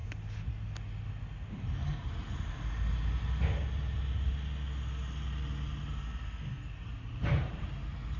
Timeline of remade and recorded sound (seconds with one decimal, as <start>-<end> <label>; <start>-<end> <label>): 0.0-1.5 recorded; 1.5-1.9 remade; 1.9-6.8 recorded; 6.8-8.2 remade